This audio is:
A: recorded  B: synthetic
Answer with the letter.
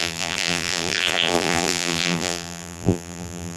B